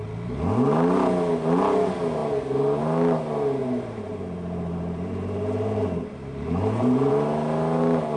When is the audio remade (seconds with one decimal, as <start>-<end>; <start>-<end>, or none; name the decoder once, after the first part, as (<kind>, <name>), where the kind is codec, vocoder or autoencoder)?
3.6-7.1 (vocoder, BigVGAN v2)